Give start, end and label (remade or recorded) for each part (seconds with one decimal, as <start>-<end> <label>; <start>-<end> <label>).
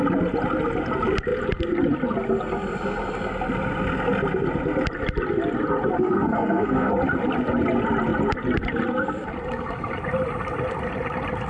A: 0.0-6.0 recorded; 6.0-6.9 remade; 6.9-11.5 recorded